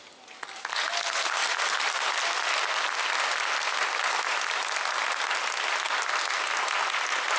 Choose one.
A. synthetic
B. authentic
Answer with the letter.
B